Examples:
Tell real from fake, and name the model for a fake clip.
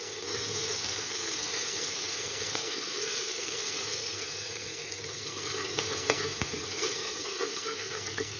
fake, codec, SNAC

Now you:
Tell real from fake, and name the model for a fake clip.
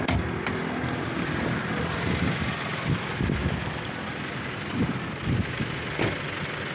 real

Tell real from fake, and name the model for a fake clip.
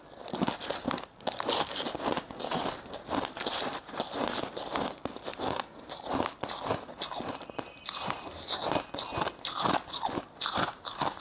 real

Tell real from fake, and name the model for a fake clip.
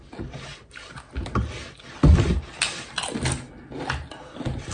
real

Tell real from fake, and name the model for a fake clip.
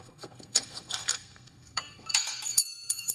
fake, codec, SNAC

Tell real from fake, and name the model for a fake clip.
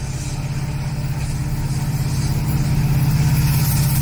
real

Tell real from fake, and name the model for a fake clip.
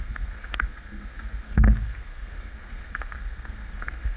fake, codec, SNAC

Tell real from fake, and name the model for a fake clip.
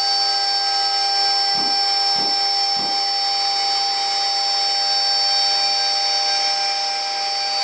real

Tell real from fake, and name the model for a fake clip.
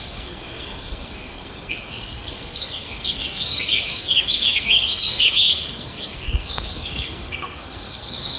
fake, codec, SNAC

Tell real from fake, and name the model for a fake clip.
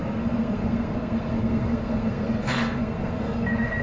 fake, codec, SNAC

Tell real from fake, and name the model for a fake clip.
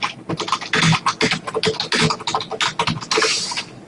real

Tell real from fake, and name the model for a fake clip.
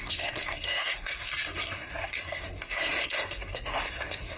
fake, codec, SNAC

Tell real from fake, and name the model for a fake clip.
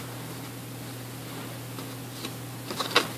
real